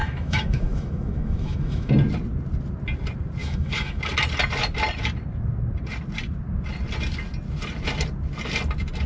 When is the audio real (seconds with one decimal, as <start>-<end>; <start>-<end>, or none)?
1.9-3.4; 4.0-9.1